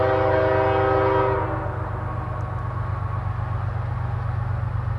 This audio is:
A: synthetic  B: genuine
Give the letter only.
B